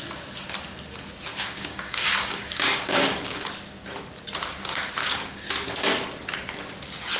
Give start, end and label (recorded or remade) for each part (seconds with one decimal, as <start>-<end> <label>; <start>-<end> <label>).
0.0-1.3 recorded; 1.3-3.5 remade; 3.5-5.0 recorded; 5.0-5.5 remade; 5.5-7.2 recorded